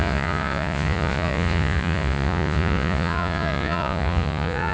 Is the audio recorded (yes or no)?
no